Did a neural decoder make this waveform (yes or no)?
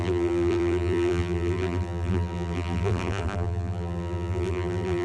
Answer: yes